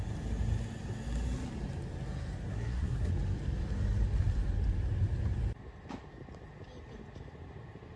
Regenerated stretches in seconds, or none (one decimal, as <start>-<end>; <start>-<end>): 2.5-3.1